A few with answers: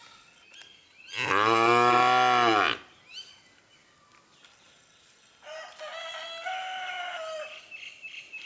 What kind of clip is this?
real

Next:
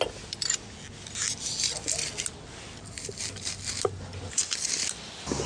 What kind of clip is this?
real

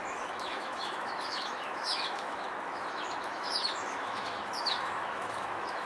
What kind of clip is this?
fake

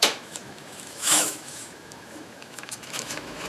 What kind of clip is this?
fake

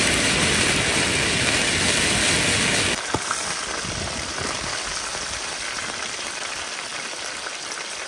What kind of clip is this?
real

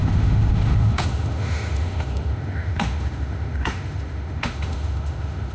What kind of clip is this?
fake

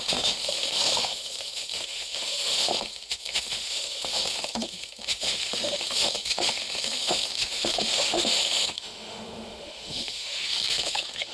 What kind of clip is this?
fake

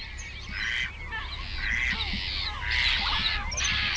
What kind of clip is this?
real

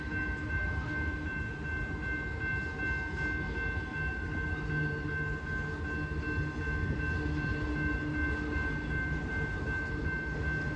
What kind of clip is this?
real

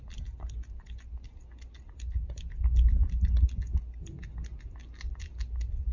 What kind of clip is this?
real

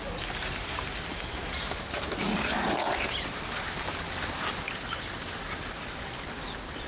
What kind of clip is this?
real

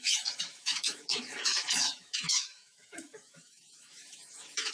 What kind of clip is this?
fake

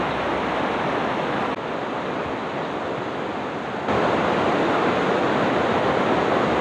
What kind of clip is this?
real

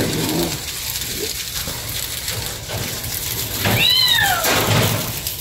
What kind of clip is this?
real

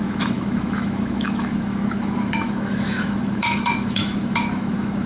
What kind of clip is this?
fake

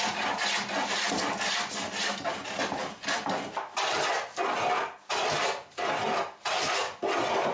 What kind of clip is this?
real